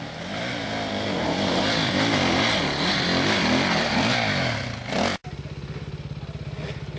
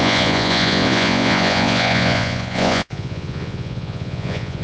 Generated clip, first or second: second